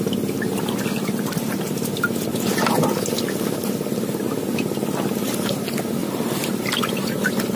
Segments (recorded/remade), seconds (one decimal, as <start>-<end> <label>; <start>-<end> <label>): 0.0-6.0 recorded; 6.0-6.8 remade; 6.8-7.6 recorded